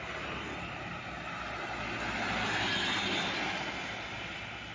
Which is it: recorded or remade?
recorded